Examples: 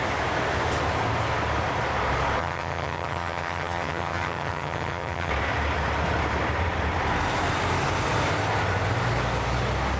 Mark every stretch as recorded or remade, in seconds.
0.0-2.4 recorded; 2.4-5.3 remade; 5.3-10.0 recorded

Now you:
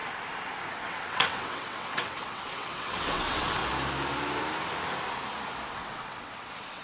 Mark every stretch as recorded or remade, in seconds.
0.0-0.7 recorded; 0.7-3.6 remade; 3.6-5.7 recorded; 5.7-6.8 remade

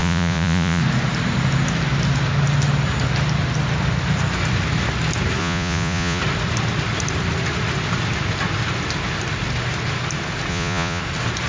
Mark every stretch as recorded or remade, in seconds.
0.0-0.8 remade; 0.8-5.4 recorded; 5.4-6.2 remade; 6.2-10.5 recorded; 10.5-11.0 remade; 11.0-11.5 recorded

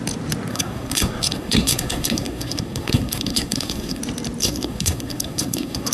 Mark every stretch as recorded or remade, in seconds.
0.0-0.5 recorded; 0.5-4.0 remade; 4.0-4.4 recorded; 4.4-5.9 remade

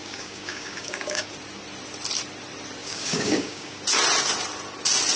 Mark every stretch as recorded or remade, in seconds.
0.0-1.3 remade; 1.3-2.8 recorded; 2.8-3.8 remade; 3.8-5.2 recorded

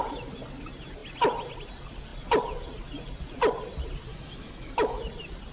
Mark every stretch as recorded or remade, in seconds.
0.0-4.1 recorded; 4.1-5.0 remade; 5.0-5.5 recorded